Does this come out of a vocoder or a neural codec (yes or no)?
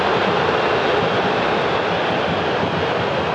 no